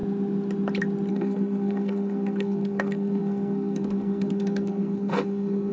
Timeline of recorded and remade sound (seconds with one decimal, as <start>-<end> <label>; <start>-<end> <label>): 0.0-1.1 recorded; 1.1-5.7 remade